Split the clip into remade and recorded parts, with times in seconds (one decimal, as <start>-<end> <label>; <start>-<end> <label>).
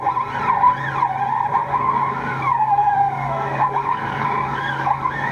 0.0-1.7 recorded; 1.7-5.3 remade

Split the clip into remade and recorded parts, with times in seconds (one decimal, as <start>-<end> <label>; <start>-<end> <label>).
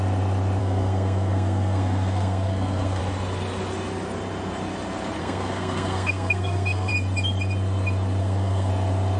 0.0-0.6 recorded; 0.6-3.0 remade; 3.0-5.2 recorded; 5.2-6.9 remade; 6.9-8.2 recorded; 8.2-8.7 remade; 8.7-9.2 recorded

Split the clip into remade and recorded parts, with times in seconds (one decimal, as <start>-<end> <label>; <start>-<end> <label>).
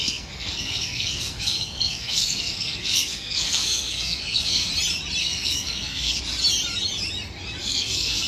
0.0-4.7 remade; 4.7-5.2 recorded; 5.2-6.2 remade; 6.2-7.6 recorded; 7.6-8.3 remade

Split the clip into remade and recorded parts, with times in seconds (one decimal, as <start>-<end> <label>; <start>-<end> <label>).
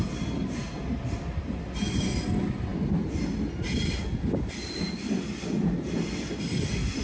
0.0-7.0 recorded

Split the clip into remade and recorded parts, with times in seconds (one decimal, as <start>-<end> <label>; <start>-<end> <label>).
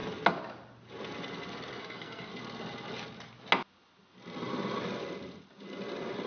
0.0-1.8 recorded; 1.8-2.3 remade; 2.3-6.3 recorded